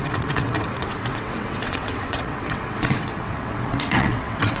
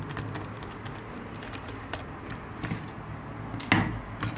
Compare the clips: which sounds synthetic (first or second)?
first